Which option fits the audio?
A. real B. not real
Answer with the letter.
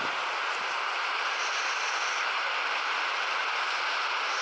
A